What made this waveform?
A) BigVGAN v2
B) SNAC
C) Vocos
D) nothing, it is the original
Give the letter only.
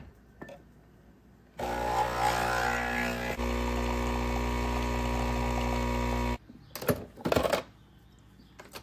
D